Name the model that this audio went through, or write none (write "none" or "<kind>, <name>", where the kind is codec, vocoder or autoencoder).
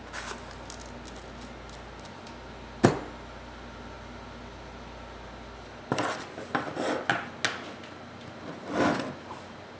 none